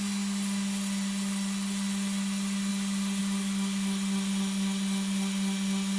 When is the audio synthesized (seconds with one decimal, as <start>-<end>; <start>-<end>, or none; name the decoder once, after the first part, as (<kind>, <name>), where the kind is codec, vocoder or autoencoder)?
none